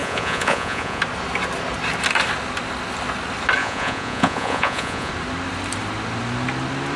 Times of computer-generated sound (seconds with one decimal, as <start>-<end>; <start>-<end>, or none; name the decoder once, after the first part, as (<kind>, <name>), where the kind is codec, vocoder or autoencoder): 0.0-1.0 (vocoder, Vocos); 3.6-5.1